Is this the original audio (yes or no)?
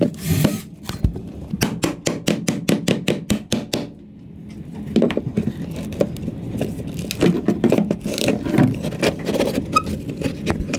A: yes